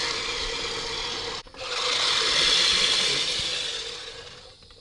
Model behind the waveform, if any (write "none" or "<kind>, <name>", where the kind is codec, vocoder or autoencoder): none